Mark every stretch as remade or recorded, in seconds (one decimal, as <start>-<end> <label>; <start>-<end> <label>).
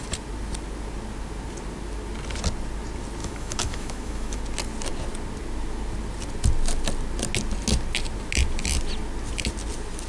0.0-3.2 recorded; 3.2-4.4 remade; 4.4-10.1 recorded